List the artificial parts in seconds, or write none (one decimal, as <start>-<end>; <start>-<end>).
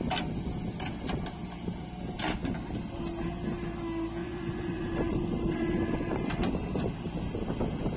4.2-6.5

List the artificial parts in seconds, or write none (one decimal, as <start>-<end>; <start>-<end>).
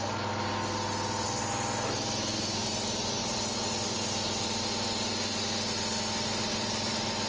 none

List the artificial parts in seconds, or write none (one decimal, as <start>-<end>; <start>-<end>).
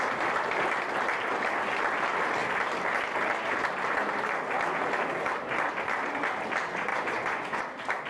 6.9-7.6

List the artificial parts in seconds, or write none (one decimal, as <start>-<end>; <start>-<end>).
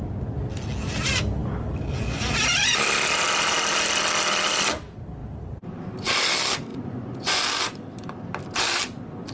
6.7-7.4